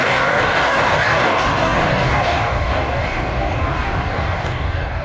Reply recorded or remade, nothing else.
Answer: remade